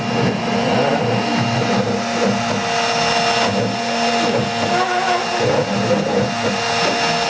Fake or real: real